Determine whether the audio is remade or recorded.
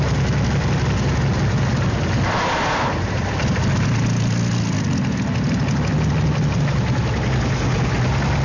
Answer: recorded